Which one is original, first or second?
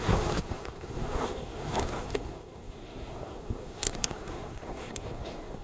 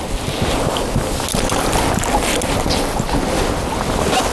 second